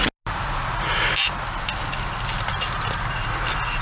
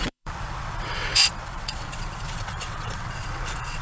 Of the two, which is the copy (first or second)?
second